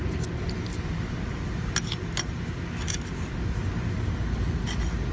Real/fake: real